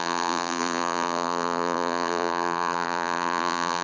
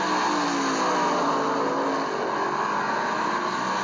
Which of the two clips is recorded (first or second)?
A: second